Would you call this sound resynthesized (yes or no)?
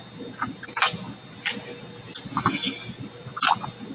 yes